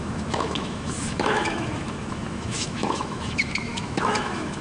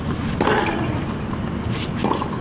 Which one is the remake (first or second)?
first